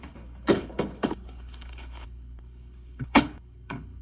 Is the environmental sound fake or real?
fake